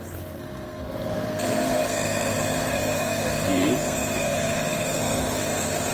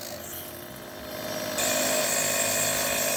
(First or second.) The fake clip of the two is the first